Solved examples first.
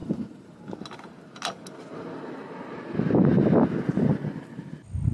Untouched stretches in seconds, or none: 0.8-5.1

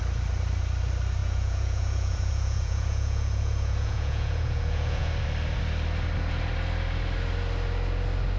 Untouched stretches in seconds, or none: 0.0-1.2; 5.1-8.4

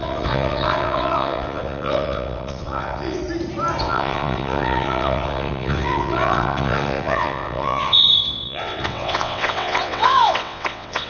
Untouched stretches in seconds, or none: 3.2-3.8

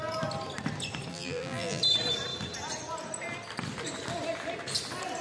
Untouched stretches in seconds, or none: 0.0-1.1; 1.8-5.2

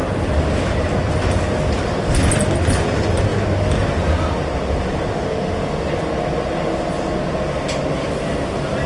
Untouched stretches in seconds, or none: 0.0-8.9

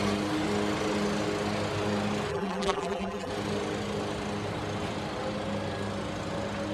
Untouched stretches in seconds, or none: 0.0-2.3; 3.3-6.7

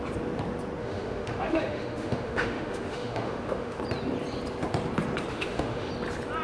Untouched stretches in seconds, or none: 0.0-0.8; 3.8-5.3; 5.9-6.4

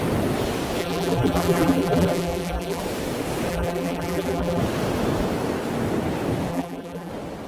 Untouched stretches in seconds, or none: 0.0-0.8; 2.8-3.5; 4.6-6.5; 7.1-7.5